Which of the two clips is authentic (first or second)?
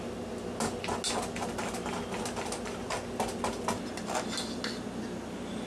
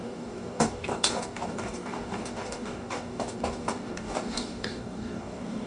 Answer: first